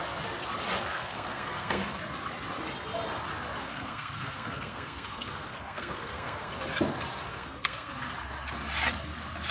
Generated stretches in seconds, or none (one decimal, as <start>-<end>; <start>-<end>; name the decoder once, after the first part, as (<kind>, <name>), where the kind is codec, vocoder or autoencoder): 0.9-2.0 (codec, SNAC); 3.6-6.5; 7.3-7.9